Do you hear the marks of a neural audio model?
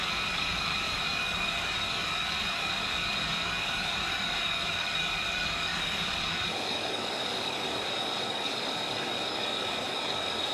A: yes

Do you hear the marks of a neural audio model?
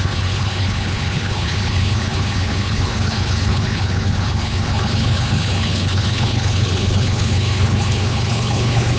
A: yes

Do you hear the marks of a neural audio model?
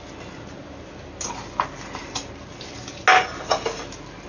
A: no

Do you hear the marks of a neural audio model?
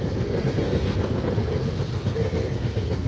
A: yes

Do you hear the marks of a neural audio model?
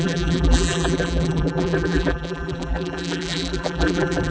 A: yes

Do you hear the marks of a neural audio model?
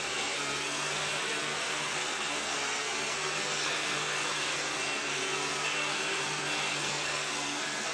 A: yes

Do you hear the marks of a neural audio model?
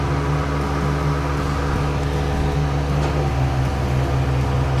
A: no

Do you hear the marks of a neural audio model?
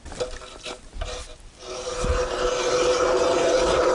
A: no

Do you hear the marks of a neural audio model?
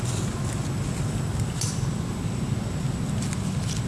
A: no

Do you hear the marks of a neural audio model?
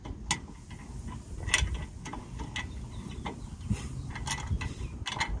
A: no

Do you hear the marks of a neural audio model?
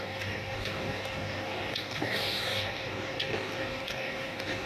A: yes